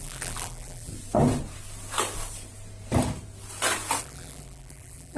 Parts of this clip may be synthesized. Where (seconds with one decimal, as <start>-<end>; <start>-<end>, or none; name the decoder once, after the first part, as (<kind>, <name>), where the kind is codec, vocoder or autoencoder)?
0.0-0.9 (vocoder, BigVGAN v2); 4.0-5.2